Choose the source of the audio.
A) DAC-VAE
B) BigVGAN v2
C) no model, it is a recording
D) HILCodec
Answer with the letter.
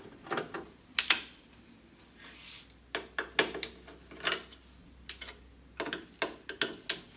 C